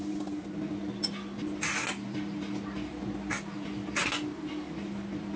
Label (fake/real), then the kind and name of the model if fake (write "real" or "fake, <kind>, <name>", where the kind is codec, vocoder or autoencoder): real